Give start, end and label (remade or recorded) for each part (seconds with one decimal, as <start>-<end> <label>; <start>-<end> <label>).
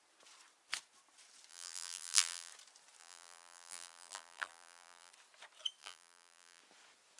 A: 0.0-1.5 recorded; 1.5-2.5 remade; 2.5-3.0 recorded; 3.0-5.1 remade; 5.1-5.8 recorded; 5.8-6.6 remade; 6.6-7.2 recorded